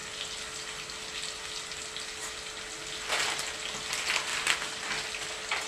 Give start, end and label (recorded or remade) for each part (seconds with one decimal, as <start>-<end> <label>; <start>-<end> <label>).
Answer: 0.0-4.3 recorded; 4.3-4.8 remade; 4.8-5.7 recorded